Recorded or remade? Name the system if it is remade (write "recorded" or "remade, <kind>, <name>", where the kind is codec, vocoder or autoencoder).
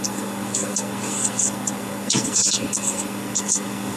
remade, codec, SNAC